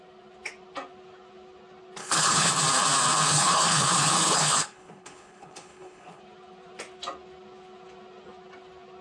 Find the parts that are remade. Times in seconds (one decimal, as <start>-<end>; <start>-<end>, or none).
2.0-2.5; 3.3-6.2